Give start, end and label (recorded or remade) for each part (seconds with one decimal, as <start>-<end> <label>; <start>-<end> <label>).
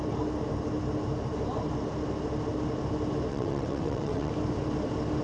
0.0-3.3 recorded; 3.3-4.3 remade; 4.3-5.2 recorded